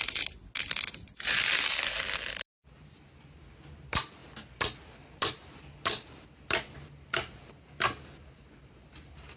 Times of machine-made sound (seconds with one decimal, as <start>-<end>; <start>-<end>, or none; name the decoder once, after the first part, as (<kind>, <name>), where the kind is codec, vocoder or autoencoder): none